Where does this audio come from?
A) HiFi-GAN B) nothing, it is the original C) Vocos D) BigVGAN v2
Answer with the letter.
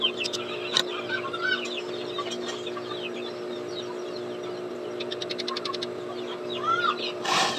B